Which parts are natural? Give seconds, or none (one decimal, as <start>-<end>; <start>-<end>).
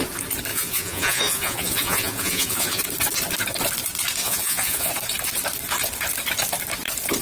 0.0-0.5; 2.8-4.2; 4.9-7.2